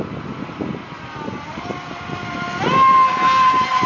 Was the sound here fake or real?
real